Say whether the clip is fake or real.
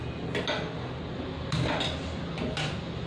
real